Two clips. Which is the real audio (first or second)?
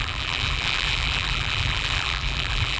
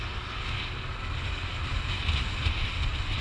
second